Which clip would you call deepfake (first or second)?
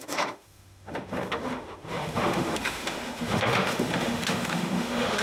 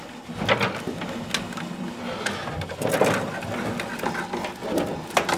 first